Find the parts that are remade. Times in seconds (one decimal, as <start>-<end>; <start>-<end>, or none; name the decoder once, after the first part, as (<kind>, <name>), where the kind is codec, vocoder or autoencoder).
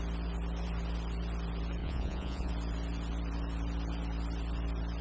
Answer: 1.8-2.5 (vocoder, Vocos)